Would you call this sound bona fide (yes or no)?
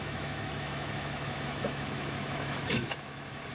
no